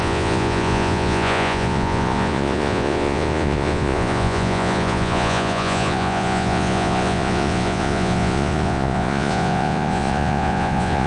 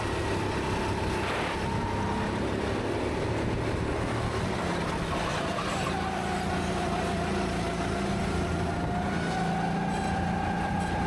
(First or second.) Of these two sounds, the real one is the second